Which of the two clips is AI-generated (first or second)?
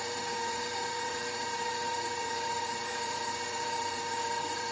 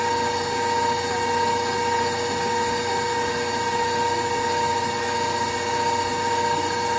first